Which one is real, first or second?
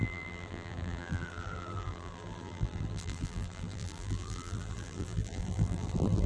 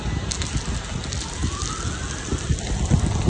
second